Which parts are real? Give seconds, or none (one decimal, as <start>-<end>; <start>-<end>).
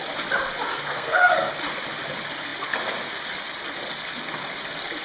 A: 0.0-0.7; 1.5-5.0